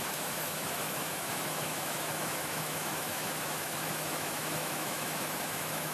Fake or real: fake